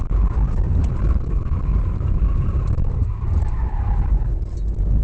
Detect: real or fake fake